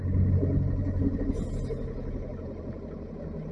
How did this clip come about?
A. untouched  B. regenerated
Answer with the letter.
A